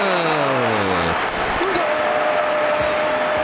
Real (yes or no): yes